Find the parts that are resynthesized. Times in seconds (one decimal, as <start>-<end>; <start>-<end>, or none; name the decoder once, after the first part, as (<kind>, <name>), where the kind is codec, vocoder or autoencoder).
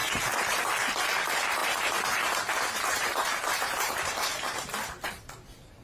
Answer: 0.0-0.6 (vocoder, BigVGAN v2); 1.6-5.1